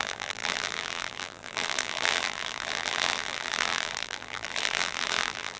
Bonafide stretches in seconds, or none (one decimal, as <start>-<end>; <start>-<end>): none